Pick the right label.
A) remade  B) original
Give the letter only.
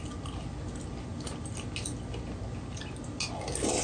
B